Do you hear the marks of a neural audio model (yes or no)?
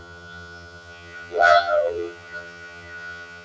yes